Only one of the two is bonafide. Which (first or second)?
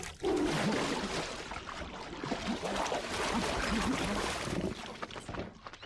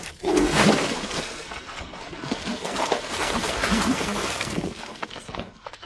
first